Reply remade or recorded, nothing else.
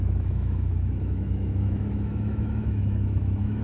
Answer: remade